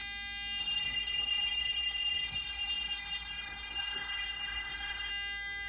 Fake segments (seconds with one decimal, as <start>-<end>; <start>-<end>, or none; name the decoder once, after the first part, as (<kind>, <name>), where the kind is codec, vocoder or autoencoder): 0.6-5.1 (codec, SNAC)